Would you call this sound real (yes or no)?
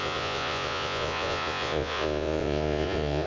no